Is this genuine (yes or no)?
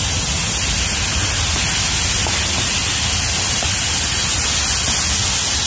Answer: yes